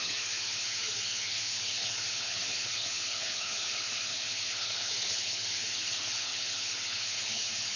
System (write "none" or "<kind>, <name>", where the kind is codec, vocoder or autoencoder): codec, HILCodec